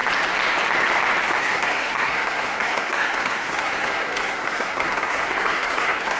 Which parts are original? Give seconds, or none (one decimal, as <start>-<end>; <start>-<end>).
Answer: 0.0-1.4